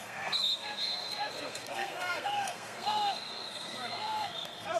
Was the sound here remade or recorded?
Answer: remade